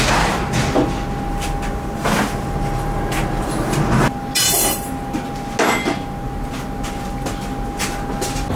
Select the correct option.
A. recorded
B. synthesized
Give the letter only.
A